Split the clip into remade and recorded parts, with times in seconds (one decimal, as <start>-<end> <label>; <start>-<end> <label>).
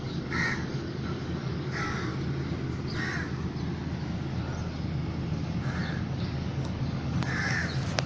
0.0-2.1 remade; 2.1-6.1 recorded; 6.1-7.6 remade; 7.6-8.1 recorded